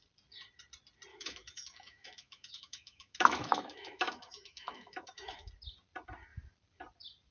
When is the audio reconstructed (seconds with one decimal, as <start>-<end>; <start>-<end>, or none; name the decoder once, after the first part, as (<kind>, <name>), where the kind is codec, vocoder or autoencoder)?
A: 1.1-5.5 (autoencoder, DAC-VAE)